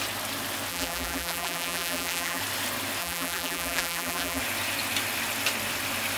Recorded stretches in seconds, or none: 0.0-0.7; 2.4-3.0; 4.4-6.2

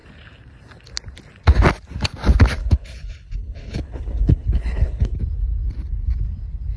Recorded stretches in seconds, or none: 0.0-2.6; 5.2-6.8

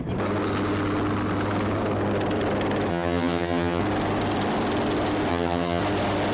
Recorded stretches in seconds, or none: 0.0-2.9; 3.8-5.3; 5.8-6.3

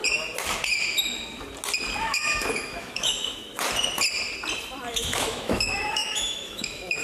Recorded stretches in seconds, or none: 0.0-2.0; 3.5-4.9

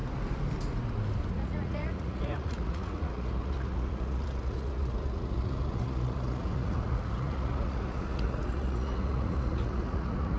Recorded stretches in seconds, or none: 0.0-1.3

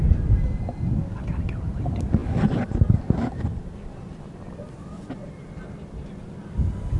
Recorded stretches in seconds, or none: 0.0-7.0

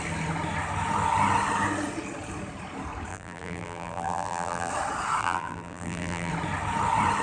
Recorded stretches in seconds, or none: 0.0-3.1; 4.7-5.2; 6.3-7.2

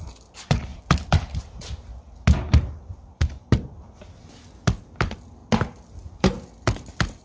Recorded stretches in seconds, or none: 0.0-0.7; 1.4-7.2